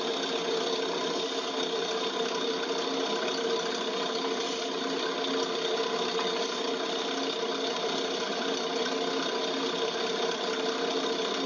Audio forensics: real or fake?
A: real